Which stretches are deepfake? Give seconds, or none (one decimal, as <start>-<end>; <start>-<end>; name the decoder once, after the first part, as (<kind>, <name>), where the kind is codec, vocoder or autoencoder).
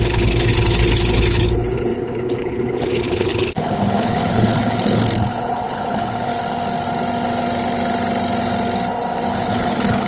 0.0-6.3 (codec, HILCodec); 9.3-10.1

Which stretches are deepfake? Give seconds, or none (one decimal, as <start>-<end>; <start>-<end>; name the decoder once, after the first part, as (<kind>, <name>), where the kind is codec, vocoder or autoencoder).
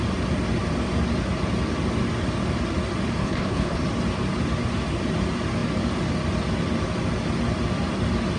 3.2-3.8 (codec, HILCodec)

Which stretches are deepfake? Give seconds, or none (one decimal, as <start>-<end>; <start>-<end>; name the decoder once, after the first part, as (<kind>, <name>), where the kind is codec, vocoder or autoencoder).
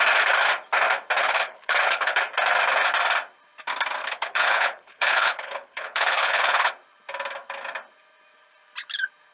1.2-2.2 (codec, HILCodec); 4.0-6.7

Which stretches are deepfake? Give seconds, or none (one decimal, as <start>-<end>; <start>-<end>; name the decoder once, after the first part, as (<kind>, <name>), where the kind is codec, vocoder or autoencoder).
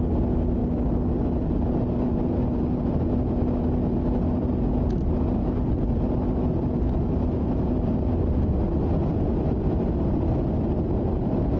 none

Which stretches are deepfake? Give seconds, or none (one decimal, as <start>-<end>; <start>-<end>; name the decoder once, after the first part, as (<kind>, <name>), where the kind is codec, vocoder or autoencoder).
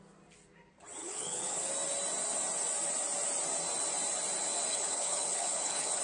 1.0-1.7 (codec, HILCodec); 4.7-6.0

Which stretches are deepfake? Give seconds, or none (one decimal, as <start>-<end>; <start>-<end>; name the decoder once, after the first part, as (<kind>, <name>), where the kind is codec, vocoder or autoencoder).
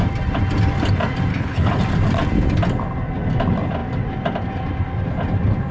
1.3-1.8 (codec, HILCodec)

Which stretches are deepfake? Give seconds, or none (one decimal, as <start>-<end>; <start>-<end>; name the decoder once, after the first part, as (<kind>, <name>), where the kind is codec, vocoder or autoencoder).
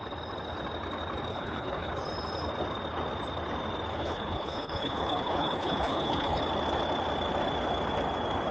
1.3-1.9 (codec, HILCodec); 3.9-6.4